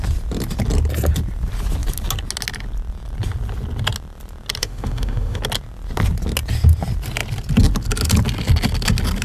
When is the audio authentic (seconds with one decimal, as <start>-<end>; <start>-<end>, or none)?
0.0-4.6; 5.4-9.2